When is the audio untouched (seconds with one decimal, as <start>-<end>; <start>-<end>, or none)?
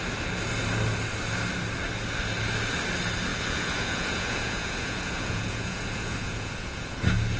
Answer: 0.0-3.3; 7.0-7.4